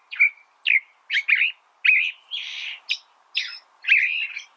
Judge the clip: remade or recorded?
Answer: recorded